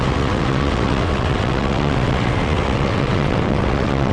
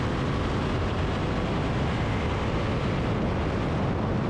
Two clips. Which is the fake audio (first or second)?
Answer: first